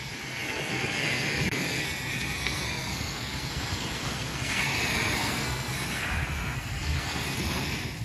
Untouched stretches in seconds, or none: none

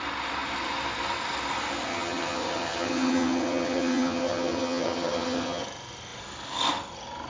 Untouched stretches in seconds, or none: 0.0-1.9; 5.6-7.3

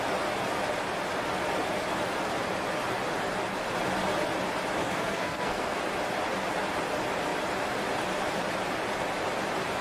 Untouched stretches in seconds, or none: 0.0-4.8; 5.8-9.8

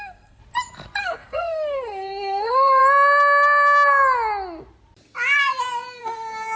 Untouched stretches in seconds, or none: 0.4-1.0; 2.8-6.0